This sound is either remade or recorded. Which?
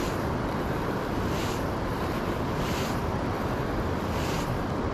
remade